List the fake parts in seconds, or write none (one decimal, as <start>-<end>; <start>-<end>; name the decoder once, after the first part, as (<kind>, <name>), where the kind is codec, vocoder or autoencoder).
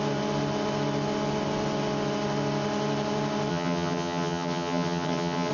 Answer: 3.5-5.5 (vocoder, HiFi-GAN)